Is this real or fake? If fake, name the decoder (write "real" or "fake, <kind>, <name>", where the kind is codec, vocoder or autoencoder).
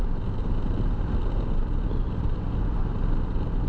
real